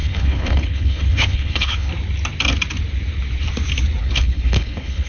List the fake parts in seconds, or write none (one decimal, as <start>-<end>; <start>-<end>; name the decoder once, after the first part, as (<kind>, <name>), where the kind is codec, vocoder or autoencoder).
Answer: 0.0-1.9 (codec, HILCodec); 4.0-5.1